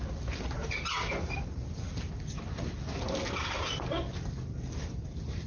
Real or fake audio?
real